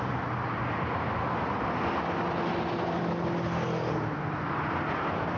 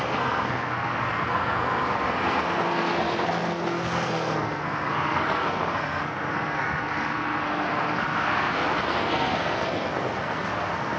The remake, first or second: second